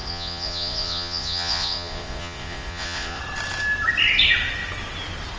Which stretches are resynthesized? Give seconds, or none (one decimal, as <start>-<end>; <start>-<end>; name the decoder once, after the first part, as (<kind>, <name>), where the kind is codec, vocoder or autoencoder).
0.0-3.2 (vocoder, Vocos)